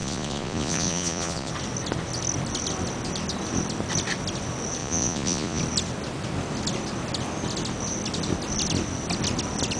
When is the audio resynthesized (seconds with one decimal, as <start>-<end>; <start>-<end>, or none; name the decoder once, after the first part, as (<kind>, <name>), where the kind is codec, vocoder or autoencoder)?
0.0-1.5 (vocoder, Vocos); 4.8-5.6